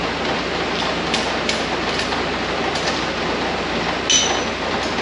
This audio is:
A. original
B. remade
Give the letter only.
A